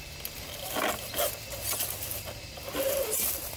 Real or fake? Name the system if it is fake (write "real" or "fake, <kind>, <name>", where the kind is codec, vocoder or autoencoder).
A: real